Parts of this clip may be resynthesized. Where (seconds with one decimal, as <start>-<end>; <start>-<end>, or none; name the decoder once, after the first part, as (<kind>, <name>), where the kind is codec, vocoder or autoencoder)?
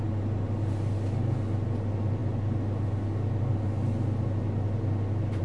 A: none